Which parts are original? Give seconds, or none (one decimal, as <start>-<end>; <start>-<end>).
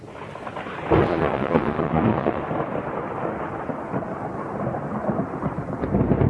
0.0-1.0; 2.4-6.3